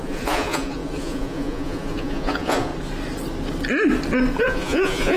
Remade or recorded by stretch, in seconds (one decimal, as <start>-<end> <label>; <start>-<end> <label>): 0.0-2.7 remade; 2.7-4.4 recorded; 4.4-5.2 remade